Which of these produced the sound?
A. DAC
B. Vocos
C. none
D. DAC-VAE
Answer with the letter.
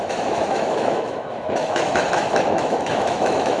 D